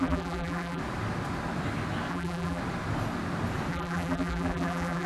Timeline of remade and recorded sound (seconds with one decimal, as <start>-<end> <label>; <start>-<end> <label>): 0.0-0.8 remade; 0.8-2.1 recorded; 2.1-2.6 remade; 2.6-3.7 recorded; 3.7-5.1 remade